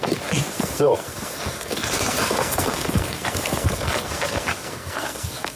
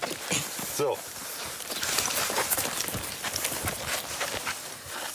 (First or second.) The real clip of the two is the second